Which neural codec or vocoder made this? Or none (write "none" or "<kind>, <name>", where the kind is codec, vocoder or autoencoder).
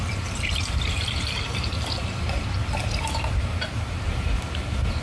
vocoder, BigVGAN v2